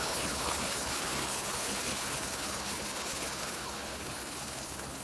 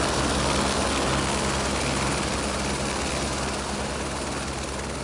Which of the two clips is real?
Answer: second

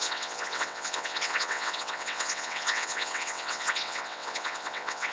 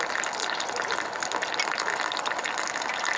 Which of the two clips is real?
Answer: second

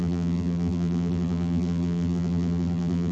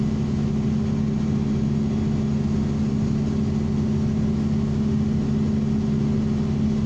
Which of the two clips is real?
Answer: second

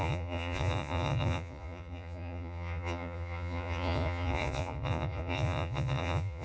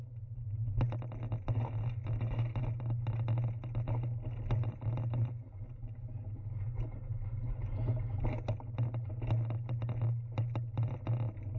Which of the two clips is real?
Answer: second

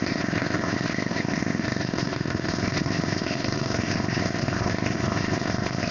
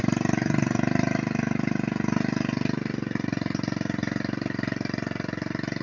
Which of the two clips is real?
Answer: second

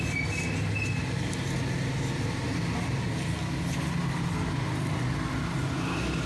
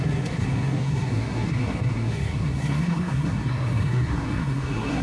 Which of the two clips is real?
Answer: first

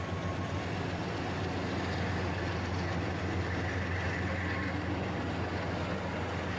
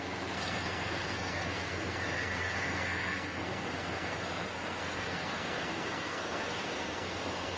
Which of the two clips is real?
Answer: first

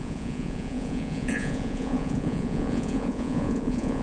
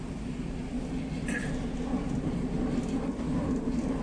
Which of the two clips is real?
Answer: second